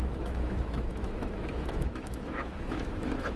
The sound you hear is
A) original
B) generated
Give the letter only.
B